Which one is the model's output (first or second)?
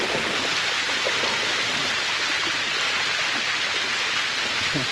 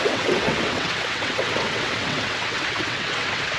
second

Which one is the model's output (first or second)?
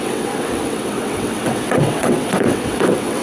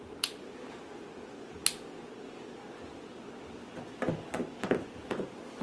first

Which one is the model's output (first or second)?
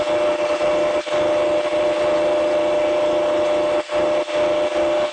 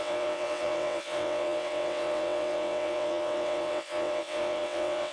second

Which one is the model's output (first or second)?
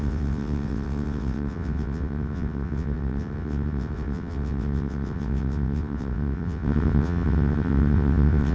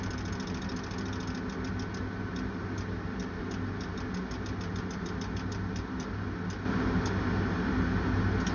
first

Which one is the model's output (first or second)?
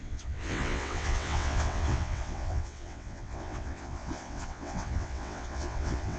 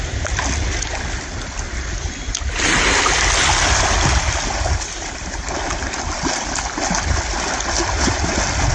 first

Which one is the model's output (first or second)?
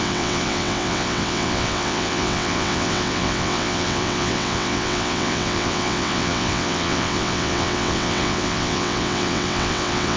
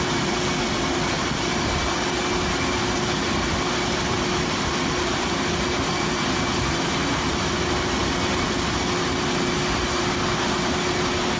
first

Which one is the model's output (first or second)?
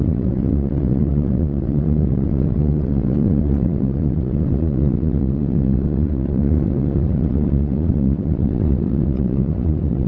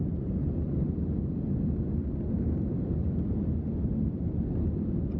first